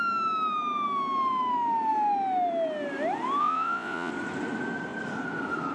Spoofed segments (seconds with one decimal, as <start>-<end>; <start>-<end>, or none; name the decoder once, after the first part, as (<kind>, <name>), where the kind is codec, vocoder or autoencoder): 3.4-4.1 (vocoder, Vocos)